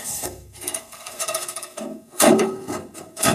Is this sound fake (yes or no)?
yes